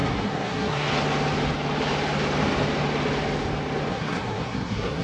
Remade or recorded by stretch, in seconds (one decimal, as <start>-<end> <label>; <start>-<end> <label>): 0.0-0.9 remade; 0.9-3.9 recorded; 3.9-5.0 remade